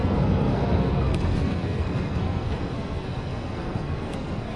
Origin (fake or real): fake